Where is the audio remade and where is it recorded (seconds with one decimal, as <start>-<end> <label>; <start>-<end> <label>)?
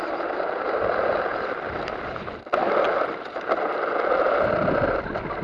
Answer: 0.0-5.4 recorded